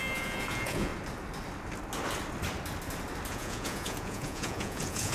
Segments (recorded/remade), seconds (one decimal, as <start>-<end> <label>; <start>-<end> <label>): 0.0-0.9 remade; 0.9-3.3 recorded; 3.3-5.1 remade